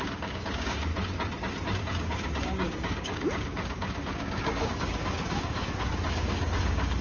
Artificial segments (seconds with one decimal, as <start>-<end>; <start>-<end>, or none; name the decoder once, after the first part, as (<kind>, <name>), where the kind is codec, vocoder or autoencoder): 0.0-0.9 (codec, DAC); 1.8-7.0